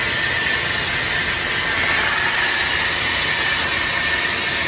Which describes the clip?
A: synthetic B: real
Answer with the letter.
B